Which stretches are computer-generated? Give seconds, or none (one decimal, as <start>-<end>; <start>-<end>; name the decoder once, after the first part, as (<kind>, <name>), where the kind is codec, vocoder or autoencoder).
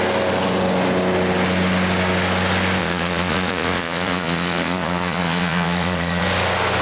2.8-6.2 (vocoder, Vocos)